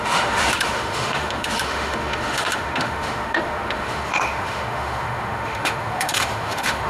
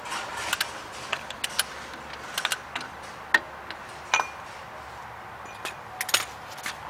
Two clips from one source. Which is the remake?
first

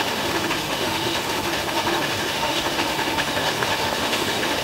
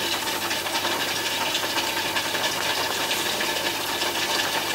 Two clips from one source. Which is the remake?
first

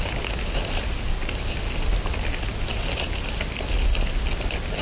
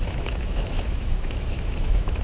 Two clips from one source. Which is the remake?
second